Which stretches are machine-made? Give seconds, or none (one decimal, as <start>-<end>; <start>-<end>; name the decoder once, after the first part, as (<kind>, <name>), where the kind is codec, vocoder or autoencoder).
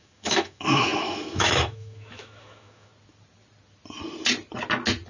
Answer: 0.0-2.9 (autoencoder, DAC-VAE)